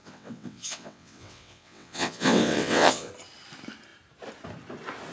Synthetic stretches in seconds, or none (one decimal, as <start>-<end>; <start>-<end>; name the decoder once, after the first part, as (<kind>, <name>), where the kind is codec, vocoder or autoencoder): 0.0-3.1 (vocoder, WaveNeXt)